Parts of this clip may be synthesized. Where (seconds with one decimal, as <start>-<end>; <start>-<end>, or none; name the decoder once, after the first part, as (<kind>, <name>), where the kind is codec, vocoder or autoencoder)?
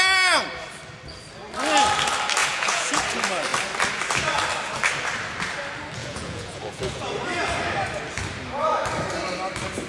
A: 2.4-3.0 (vocoder, Vocos); 6.0-7.0